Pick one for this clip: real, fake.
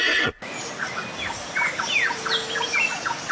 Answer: real